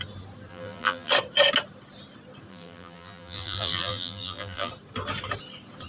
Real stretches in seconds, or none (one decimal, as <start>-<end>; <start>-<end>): 0.0-0.5; 1.1-2.5; 4.7-5.9